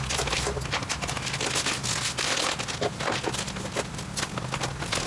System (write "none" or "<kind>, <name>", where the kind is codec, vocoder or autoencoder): none